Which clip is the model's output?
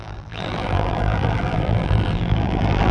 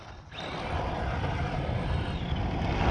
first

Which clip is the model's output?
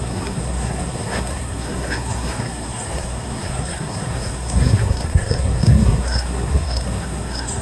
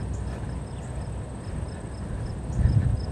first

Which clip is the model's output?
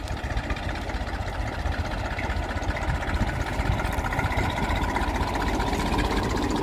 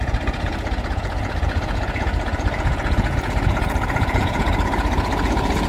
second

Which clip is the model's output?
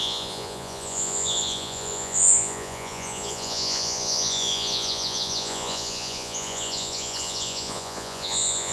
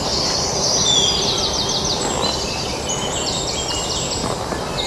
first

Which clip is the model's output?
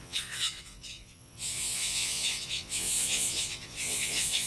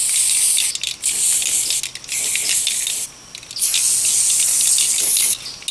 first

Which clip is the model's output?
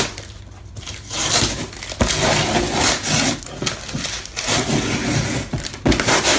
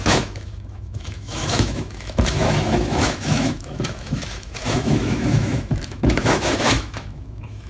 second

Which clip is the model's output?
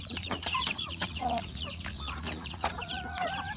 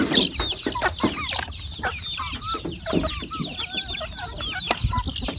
first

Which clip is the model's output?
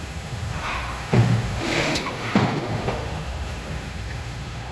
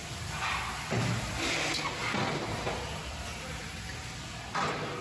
first